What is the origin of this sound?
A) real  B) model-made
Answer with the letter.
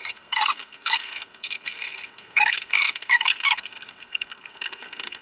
B